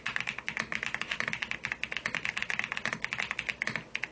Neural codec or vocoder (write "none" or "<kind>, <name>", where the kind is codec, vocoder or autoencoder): none